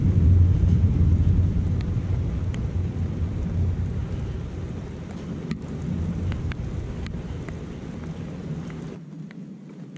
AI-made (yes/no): no